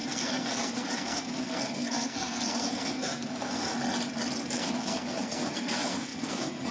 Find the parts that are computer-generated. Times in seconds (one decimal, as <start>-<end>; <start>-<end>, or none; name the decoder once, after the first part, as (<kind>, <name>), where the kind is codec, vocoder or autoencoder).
0.0-3.7 (codec, SNAC); 4.5-6.7